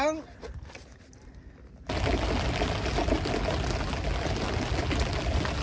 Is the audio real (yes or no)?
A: yes